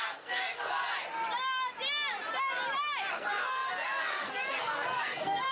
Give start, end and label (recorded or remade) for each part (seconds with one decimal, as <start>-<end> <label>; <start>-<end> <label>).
0.0-0.8 remade; 0.8-3.1 recorded; 3.1-5.5 remade